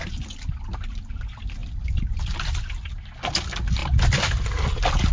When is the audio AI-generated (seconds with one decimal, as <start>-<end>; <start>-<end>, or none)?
1.6-2.4; 3.8-5.1